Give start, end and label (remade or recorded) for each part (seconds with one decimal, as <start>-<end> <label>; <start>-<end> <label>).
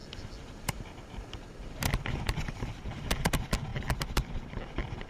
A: 0.0-5.1 recorded